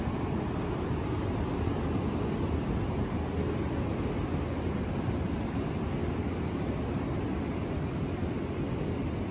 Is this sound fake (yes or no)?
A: no